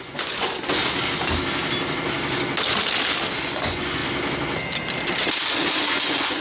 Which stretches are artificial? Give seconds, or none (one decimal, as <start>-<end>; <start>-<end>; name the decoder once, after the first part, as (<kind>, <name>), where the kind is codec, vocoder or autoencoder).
0.0-0.8 (vocoder, Vocos); 3.4-4.0; 5.7-6.4